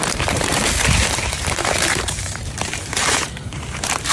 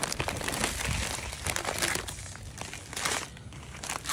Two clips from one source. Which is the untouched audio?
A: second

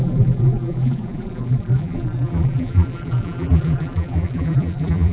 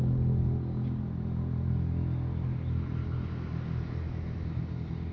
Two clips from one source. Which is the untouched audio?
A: second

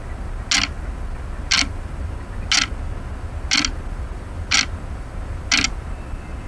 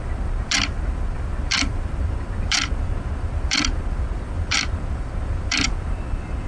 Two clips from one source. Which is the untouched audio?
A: first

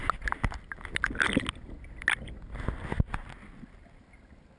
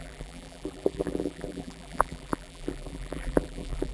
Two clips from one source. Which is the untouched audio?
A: first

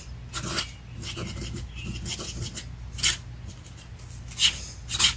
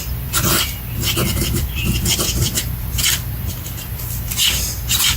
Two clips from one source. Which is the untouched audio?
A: first